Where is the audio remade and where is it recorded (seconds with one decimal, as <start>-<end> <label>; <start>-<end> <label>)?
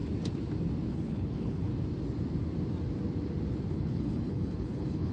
0.0-0.9 recorded; 0.9-1.7 remade; 1.7-3.7 recorded; 3.7-5.1 remade